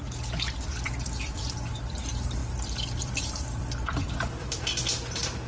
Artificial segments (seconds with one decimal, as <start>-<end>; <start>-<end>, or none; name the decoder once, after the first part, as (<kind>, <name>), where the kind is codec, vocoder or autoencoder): 0.0-5.5 (vocoder, BigVGAN v2)